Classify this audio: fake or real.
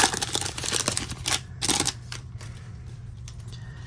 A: fake